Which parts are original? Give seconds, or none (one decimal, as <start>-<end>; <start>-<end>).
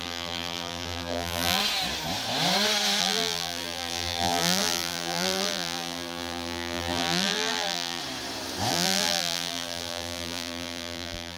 1.6-3.0; 8.0-8.7